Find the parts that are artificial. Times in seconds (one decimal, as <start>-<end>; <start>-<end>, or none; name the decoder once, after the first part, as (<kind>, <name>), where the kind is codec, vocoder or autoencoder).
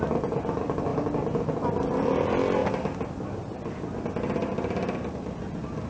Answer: none